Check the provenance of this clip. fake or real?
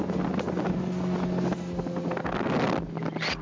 real